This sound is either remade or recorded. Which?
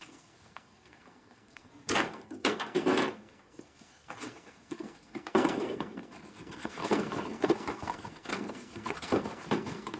remade